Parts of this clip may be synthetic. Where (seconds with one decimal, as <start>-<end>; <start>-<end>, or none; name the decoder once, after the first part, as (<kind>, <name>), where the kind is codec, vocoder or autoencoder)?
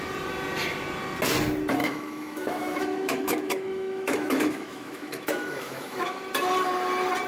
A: 1.8-6.2 (autoencoder, DAC-VAE)